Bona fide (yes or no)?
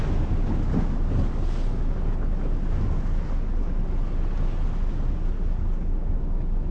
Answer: yes